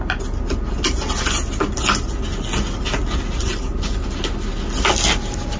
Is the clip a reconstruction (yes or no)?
no